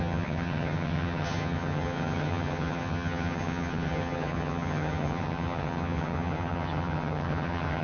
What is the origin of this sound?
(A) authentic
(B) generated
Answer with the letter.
B